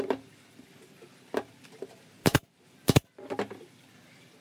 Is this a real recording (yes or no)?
yes